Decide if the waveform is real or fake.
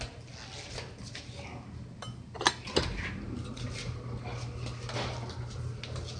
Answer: real